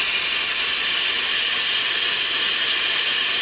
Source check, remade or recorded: recorded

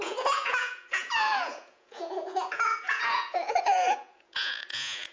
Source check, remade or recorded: remade